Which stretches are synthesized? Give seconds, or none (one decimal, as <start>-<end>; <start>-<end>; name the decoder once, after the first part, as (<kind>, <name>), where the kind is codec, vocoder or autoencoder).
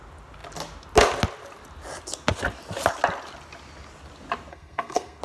4.5-5.2 (codec, SNAC)